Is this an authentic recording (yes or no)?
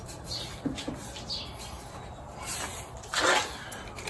yes